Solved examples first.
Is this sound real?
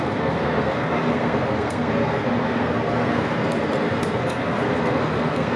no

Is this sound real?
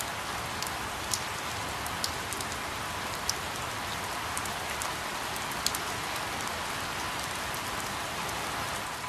yes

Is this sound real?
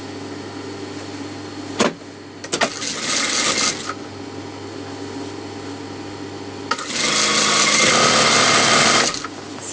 yes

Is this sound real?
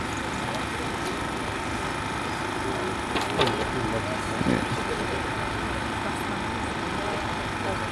yes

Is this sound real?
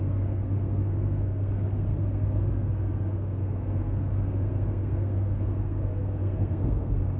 no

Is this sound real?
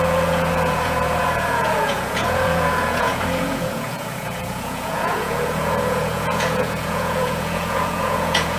no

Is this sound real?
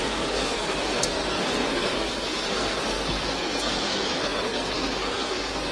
no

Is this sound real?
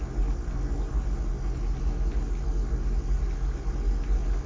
yes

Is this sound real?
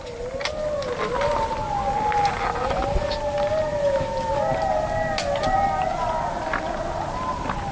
yes